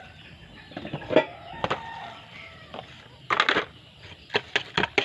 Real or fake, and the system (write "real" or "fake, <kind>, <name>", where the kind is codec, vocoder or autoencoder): real